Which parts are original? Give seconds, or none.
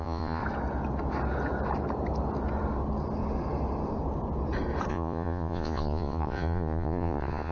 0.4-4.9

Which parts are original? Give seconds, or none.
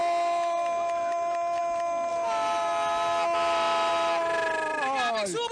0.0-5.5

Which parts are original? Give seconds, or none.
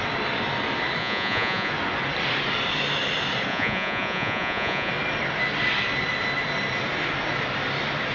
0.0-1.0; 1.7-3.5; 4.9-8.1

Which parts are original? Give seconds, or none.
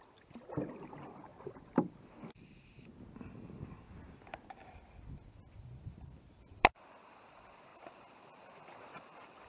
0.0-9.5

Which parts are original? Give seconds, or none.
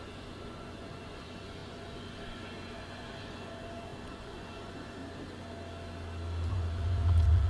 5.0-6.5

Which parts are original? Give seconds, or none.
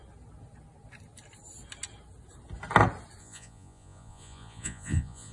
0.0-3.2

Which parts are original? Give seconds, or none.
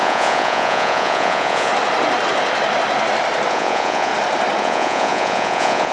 1.7-3.5; 4.1-4.6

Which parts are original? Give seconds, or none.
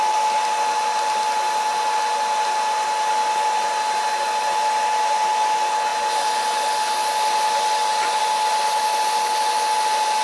0.0-10.2